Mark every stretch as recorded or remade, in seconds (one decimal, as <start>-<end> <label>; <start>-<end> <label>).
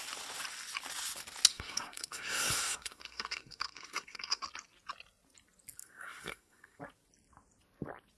0.0-1.5 recorded; 1.5-4.4 remade; 4.4-5.8 recorded; 5.8-6.8 remade; 6.8-8.2 recorded